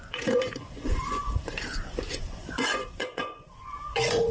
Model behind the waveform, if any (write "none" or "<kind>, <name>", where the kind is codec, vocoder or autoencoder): vocoder, Vocos